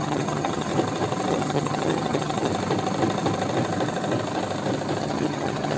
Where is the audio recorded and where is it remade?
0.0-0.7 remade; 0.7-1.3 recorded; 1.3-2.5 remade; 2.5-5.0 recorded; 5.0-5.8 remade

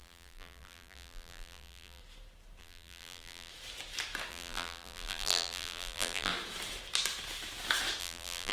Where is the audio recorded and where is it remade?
0.0-2.0 remade; 2.0-2.6 recorded; 2.6-3.5 remade; 3.5-4.3 recorded; 4.3-6.3 remade; 6.3-8.0 recorded; 8.0-8.5 remade

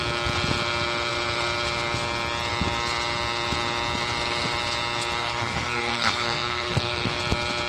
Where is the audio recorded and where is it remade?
0.0-5.2 recorded; 5.2-7.2 remade; 7.2-7.7 recorded

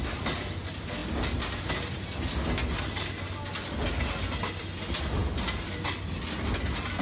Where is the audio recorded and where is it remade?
0.0-7.0 recorded

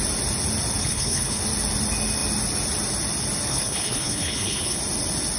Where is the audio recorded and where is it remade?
0.0-0.8 recorded; 0.8-1.4 remade; 1.4-3.5 recorded; 3.5-4.8 remade; 4.8-5.4 recorded

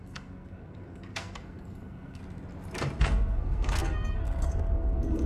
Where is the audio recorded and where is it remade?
0.0-2.2 remade; 2.2-3.0 recorded; 3.0-5.3 remade

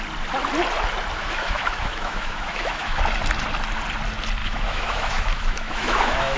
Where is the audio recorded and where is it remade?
0.0-1.2 recorded; 1.2-3.0 remade; 3.0-4.4 recorded; 4.4-6.4 remade

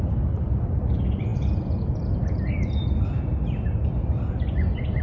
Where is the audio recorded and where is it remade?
0.0-5.0 recorded